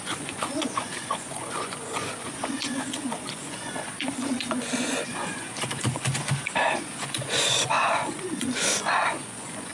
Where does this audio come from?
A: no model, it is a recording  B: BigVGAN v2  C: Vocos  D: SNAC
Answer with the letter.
C